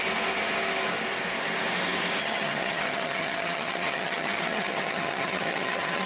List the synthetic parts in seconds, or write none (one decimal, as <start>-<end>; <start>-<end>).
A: 2.2-6.1